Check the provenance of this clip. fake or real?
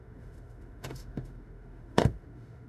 fake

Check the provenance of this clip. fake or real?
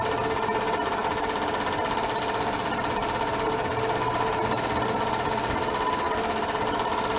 real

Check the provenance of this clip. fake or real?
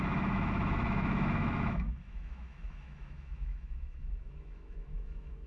fake